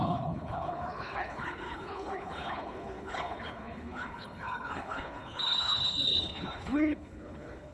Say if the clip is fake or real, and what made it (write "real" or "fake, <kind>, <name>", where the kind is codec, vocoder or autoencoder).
fake, codec, HILCodec